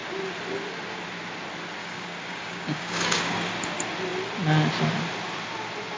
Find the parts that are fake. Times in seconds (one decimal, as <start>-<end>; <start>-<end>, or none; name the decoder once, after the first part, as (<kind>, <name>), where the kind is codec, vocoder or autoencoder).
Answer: 1.8-3.5 (codec, DAC)